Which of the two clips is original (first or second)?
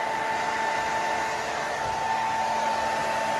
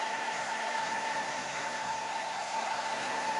first